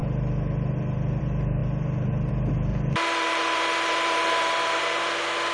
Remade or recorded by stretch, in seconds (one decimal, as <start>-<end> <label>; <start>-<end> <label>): 0.0-2.7 recorded; 2.7-4.8 remade; 4.8-5.5 recorded